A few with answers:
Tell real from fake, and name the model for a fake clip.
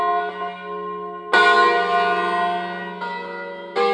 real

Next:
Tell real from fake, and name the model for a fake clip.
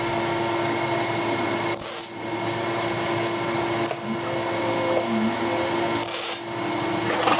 real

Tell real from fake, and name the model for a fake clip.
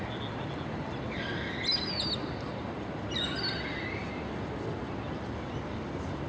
real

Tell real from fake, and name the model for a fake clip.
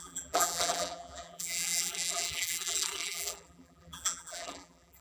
fake, vocoder, BigVGAN v2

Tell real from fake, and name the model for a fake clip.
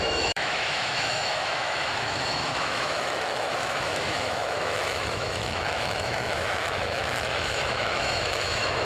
fake, autoencoder, DAC-VAE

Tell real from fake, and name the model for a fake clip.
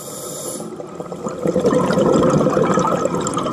real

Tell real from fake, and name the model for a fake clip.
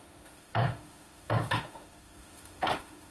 fake, autoencoder, DAC-VAE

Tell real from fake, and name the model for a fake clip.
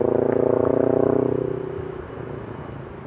real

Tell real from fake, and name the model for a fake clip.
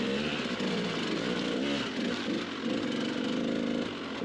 real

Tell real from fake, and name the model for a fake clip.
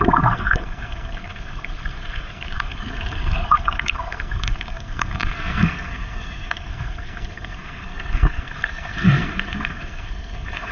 fake, codec, SNAC